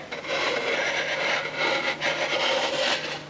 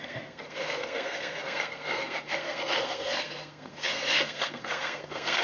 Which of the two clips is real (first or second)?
first